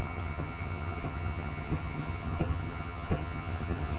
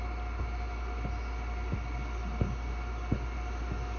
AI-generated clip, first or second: first